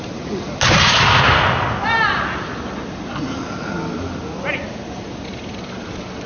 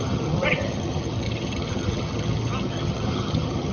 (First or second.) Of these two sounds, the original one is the first